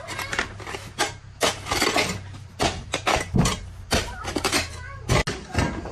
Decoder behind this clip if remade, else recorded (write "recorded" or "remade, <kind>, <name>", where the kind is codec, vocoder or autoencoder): recorded